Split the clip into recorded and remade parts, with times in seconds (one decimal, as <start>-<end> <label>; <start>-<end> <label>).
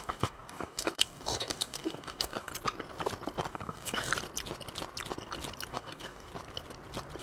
0.0-2.5 remade; 2.5-3.5 recorded; 3.5-4.1 remade; 4.1-5.7 recorded; 5.7-6.3 remade; 6.3-7.2 recorded